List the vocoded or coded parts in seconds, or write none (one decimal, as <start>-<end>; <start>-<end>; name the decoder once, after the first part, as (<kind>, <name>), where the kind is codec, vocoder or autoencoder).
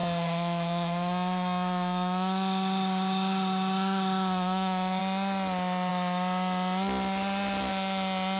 0.0-5.0 (autoencoder, DAC-VAE)